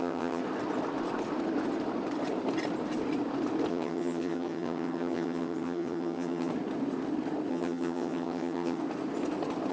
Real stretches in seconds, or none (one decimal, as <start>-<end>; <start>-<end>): 0.4-3.7; 6.5-7.5; 8.8-9.7